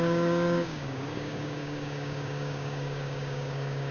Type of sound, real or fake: fake